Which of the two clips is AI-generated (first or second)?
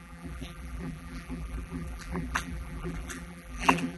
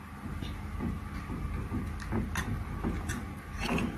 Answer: first